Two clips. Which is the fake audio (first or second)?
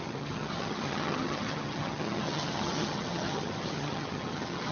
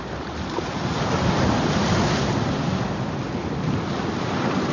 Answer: first